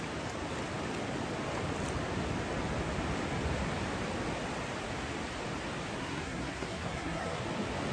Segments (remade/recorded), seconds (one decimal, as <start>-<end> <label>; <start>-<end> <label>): 0.0-5.9 recorded; 5.9-7.4 remade; 7.4-7.9 recorded